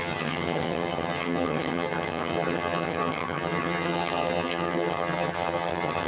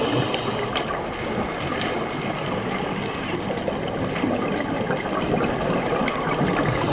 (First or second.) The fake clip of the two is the first